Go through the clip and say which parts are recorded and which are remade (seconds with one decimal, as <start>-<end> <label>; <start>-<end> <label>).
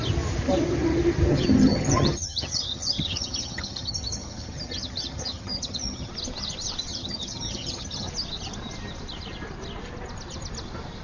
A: 0.0-1.3 recorded; 1.3-6.1 remade; 6.1-6.9 recorded; 6.9-8.1 remade; 8.1-11.0 recorded